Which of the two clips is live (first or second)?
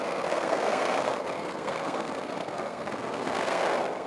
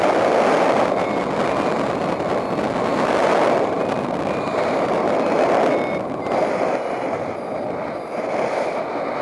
second